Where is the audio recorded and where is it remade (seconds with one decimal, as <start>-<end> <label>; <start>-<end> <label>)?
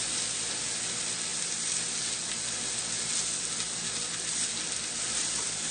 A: 0.0-5.7 recorded